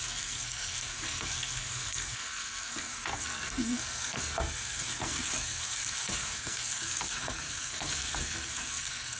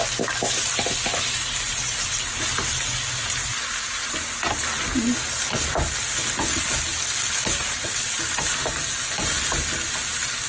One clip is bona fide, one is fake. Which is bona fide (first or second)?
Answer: second